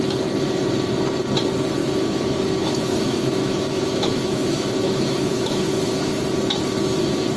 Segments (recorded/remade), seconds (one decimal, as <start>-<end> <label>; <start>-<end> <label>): 0.0-1.8 recorded; 1.8-6.2 remade; 6.2-7.4 recorded